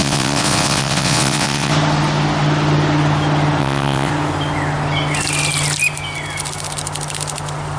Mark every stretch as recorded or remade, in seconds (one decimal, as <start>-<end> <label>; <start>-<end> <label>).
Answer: 0.0-1.7 remade; 1.7-3.6 recorded; 3.6-4.1 remade; 4.1-7.8 recorded